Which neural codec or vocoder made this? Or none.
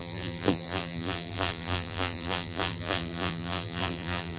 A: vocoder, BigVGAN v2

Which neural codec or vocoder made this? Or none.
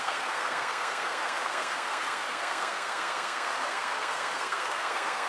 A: codec, SNAC